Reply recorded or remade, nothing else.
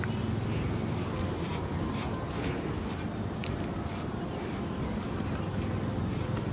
recorded